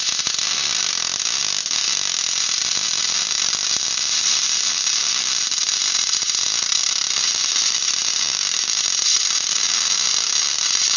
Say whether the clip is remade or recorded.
recorded